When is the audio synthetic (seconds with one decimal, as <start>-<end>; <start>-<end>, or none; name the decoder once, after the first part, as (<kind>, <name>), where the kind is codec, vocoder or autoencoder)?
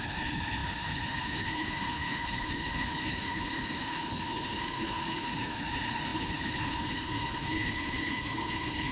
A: 0.0-8.9 (codec, HILCodec)